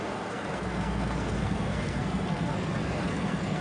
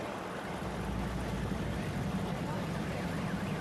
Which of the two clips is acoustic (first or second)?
second